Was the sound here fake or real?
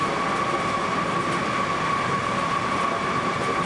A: real